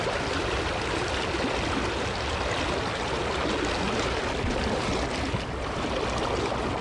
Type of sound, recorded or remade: recorded